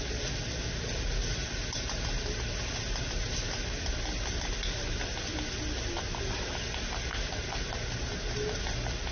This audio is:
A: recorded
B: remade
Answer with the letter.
A